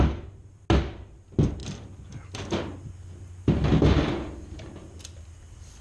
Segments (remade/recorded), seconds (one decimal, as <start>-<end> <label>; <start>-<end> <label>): 0.0-5.8 recorded